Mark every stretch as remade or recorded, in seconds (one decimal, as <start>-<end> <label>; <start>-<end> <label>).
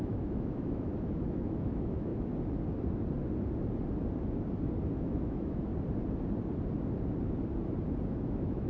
0.0-2.1 remade; 2.1-5.0 recorded; 5.0-5.7 remade; 5.7-8.1 recorded; 8.1-8.7 remade